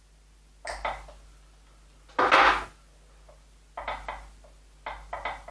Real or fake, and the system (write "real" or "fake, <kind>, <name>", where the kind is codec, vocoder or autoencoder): real